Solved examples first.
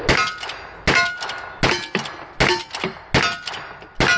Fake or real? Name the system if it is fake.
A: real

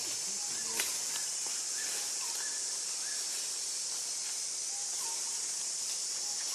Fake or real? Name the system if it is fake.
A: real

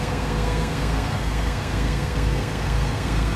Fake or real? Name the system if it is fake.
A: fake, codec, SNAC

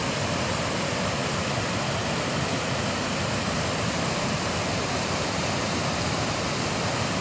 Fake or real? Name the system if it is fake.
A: real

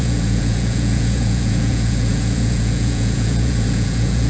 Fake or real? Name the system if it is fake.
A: fake, vocoder, Vocos